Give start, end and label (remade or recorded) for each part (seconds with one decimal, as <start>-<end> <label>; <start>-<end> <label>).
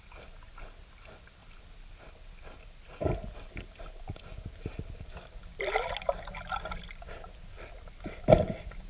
0.0-8.9 recorded